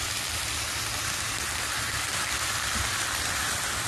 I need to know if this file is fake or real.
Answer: fake